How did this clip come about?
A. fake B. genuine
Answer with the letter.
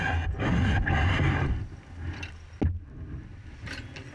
B